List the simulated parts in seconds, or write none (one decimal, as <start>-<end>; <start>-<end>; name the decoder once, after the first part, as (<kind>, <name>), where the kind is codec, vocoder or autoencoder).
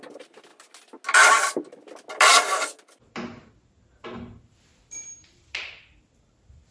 none